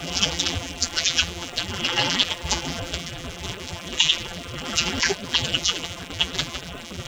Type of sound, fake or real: fake